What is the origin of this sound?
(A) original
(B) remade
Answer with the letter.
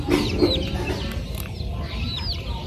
A